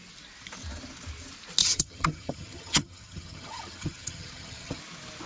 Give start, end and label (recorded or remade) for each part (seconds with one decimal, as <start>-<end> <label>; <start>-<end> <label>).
0.0-1.6 recorded; 1.6-4.8 remade; 4.8-5.3 recorded